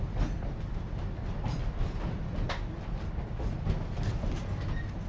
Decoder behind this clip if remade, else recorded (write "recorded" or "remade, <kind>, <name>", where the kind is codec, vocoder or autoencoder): recorded